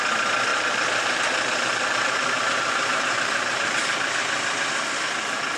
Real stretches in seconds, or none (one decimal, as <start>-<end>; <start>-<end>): 0.0-0.5; 3.9-5.6